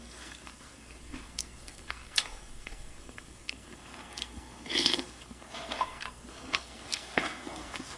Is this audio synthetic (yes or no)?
yes